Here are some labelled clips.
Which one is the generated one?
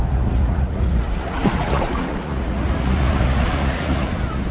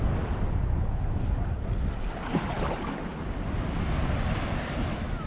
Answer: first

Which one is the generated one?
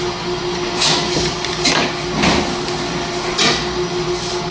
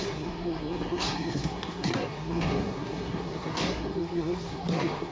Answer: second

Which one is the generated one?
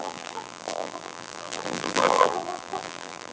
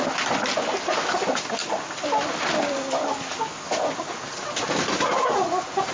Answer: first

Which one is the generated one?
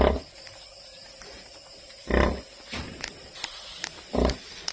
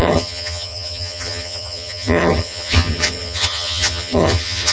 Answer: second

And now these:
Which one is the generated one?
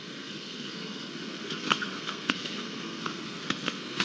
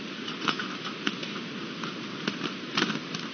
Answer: first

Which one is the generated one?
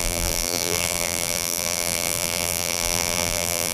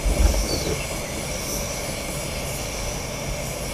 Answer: first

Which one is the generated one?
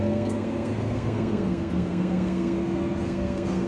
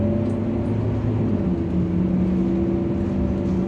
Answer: first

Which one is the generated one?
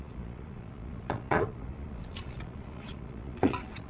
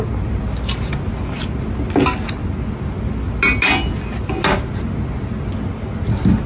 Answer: first